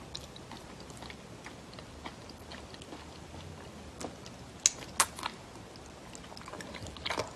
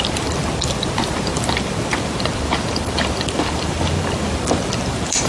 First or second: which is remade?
second